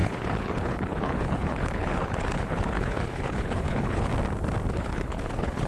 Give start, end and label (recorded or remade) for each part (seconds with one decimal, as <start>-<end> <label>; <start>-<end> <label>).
0.0-4.1 remade; 4.1-4.7 recorded; 4.7-5.7 remade